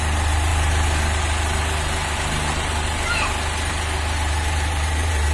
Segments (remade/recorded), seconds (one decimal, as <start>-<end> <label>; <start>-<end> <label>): 0.0-5.3 remade